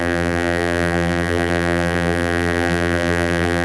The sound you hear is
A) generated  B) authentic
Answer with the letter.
A